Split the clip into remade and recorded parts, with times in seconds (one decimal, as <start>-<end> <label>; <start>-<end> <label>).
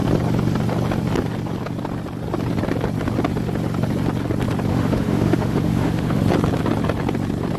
0.0-4.7 recorded; 4.7-6.2 remade; 6.2-7.6 recorded